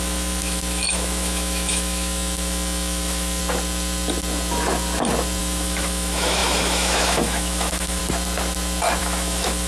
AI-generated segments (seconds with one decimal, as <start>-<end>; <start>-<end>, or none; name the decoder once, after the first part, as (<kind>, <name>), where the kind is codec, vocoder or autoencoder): 0.0-3.4 (autoencoder, DAC-VAE); 5.4-8.0; 9.0-9.7